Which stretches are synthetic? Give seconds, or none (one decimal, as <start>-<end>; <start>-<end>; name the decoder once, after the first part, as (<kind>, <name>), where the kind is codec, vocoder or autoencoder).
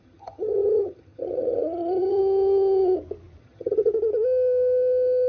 0.0-2.2 (vocoder, HiFi-GAN); 3.4-3.9